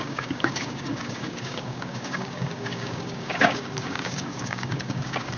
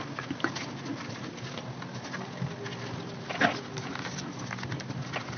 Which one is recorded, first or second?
second